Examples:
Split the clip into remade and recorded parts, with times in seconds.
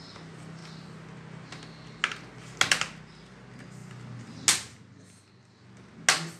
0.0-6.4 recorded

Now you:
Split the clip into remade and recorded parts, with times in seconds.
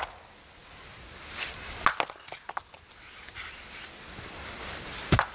0.0-5.3 recorded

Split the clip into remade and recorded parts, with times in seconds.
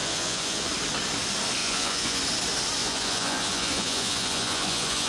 0.0-0.7 remade; 0.7-1.6 recorded; 1.6-2.2 remade; 2.2-2.8 recorded; 2.8-5.1 remade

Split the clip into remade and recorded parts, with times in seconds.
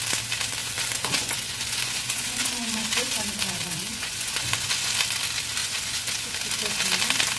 0.0-0.6 recorded; 0.6-5.0 remade; 5.0-5.6 recorded; 5.6-6.3 remade; 6.3-7.4 recorded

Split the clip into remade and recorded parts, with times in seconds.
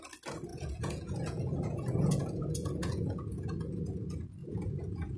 0.0-0.5 recorded; 0.5-3.6 remade; 3.6-4.4 recorded; 4.4-5.2 remade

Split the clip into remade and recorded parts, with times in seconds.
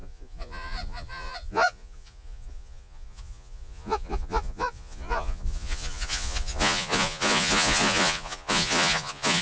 0.0-9.4 remade